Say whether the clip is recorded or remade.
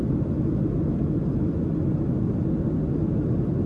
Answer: recorded